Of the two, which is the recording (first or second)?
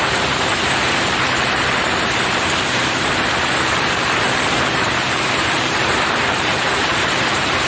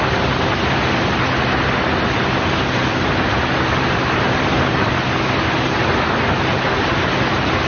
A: second